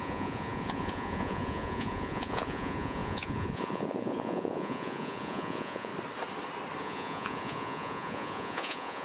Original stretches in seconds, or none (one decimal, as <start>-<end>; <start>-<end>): 5.9-6.8